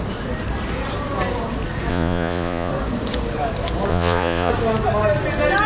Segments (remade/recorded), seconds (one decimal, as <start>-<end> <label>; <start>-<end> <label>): 0.0-1.9 recorded; 1.9-2.7 remade; 2.7-3.9 recorded; 3.9-4.5 remade; 4.5-5.7 recorded